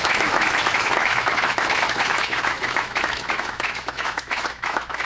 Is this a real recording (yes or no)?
no